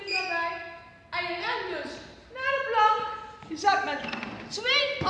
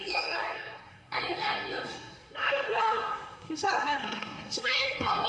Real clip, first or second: first